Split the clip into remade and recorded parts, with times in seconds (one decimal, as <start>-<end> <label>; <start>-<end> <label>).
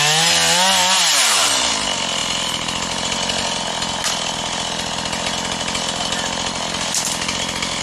0.0-7.8 recorded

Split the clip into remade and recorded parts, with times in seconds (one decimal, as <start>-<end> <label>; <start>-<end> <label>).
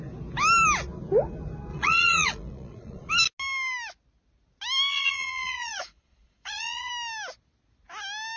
0.0-1.7 recorded; 1.7-3.1 remade; 3.1-4.9 recorded; 4.9-6.9 remade; 6.9-8.4 recorded